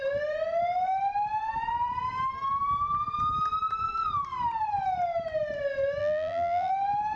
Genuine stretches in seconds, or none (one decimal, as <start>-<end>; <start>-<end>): 0.0-6.0; 6.7-7.2